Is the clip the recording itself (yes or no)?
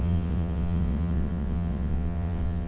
no